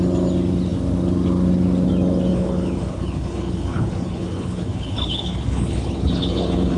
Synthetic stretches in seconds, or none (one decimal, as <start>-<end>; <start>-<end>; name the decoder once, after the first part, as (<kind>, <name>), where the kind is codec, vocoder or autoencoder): 2.3-6.8 (codec, HILCodec)